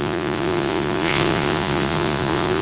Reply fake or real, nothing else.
fake